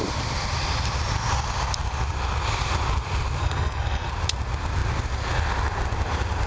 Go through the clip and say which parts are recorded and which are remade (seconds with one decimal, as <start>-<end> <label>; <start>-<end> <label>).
0.0-3.4 recorded; 3.4-4.1 remade; 4.1-6.5 recorded